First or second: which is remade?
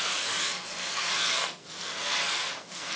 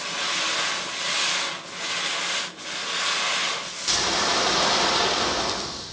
first